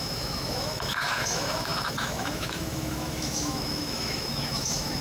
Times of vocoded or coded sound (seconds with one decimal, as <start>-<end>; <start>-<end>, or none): 0.0-5.0